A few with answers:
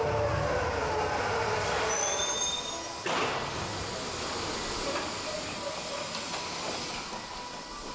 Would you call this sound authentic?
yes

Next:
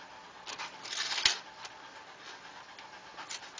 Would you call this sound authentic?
yes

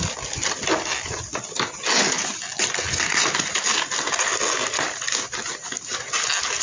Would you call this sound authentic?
yes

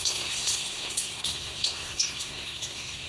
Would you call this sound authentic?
no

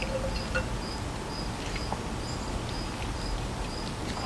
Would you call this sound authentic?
yes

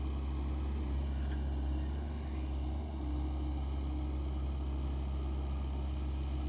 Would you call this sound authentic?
yes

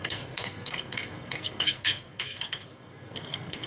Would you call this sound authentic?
no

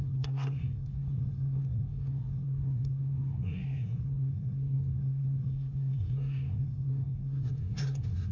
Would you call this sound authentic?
no